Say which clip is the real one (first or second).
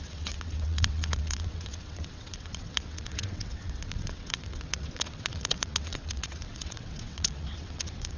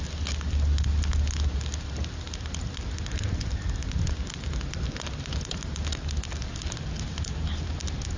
second